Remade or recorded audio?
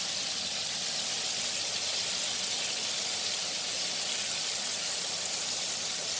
recorded